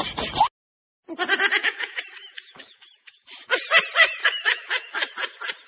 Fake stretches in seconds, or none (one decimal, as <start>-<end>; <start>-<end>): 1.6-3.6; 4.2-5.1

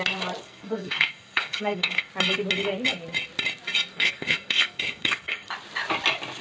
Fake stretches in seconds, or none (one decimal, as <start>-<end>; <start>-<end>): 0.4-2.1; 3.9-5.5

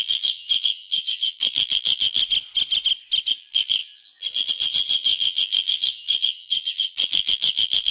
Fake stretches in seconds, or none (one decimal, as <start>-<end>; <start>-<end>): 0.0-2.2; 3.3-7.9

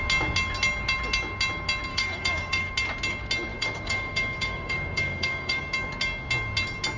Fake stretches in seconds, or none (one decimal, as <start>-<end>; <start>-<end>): 1.9-2.7; 3.5-5.6

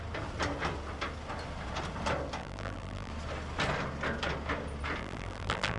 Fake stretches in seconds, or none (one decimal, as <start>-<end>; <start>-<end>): 2.4-3.1; 5.0-5.8

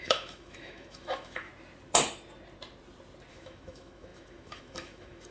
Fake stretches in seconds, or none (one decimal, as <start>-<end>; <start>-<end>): 0.0-1.5; 3.3-5.3

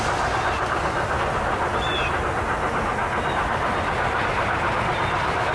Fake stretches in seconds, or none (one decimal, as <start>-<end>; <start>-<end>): none

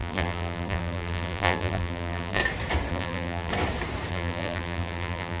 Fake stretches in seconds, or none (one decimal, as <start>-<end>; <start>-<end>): 0.0-2.4; 2.9-3.5; 4.1-5.4